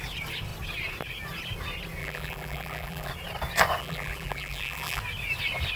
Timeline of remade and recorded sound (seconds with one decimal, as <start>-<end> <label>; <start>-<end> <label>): 0.0-2.0 recorded; 2.0-3.1 remade; 3.1-3.8 recorded; 3.8-5.0 remade; 5.0-5.8 recorded